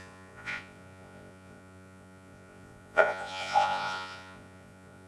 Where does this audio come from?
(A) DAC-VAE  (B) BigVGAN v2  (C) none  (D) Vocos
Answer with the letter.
D